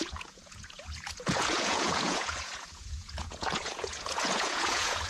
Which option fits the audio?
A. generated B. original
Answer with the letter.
A